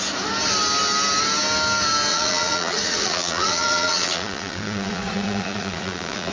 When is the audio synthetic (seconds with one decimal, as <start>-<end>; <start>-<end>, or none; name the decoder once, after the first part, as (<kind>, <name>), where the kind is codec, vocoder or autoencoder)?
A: 2.1-6.3 (vocoder, Vocos)